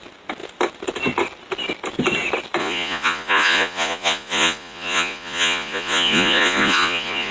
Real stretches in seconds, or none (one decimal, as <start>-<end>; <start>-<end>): 0.0-2.6